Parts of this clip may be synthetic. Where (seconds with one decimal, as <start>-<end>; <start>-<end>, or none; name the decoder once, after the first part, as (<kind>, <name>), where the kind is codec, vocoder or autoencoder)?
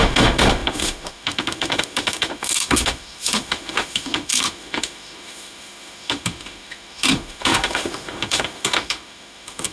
0.0-9.7 (autoencoder, DAC-VAE)